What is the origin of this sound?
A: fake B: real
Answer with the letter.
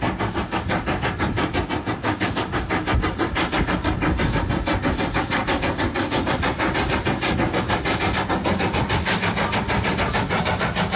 B